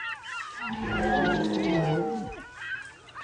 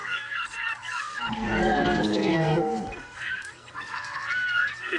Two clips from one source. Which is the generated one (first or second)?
second